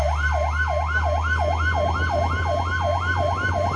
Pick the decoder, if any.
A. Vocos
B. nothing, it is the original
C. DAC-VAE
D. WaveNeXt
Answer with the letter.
B